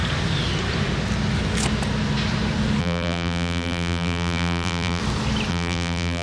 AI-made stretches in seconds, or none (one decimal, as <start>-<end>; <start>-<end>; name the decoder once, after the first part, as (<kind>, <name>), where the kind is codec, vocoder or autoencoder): 2.8-5.0 (vocoder, BigVGAN v2); 5.5-6.2